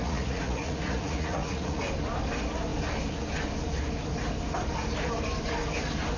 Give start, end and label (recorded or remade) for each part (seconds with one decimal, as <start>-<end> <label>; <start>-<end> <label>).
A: 0.0-1.8 remade; 1.8-6.2 recorded